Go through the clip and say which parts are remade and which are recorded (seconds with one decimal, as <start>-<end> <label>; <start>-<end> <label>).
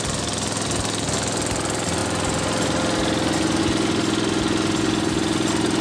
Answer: 0.0-5.8 recorded